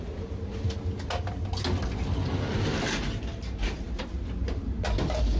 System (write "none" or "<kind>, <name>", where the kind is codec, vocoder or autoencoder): none